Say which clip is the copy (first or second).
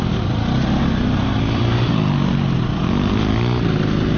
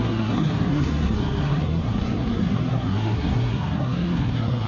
second